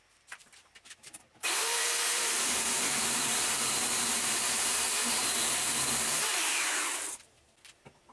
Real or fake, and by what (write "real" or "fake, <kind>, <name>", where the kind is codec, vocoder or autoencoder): fake, vocoder, BigVGAN v2